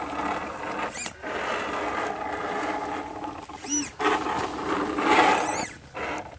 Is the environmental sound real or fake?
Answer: real